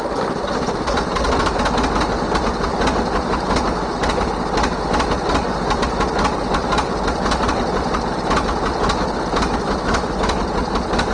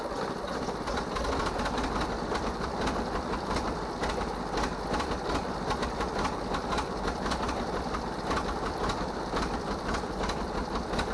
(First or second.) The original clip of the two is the first